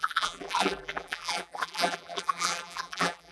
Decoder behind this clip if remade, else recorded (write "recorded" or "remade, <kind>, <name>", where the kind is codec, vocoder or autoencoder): remade, vocoder, BigVGAN v2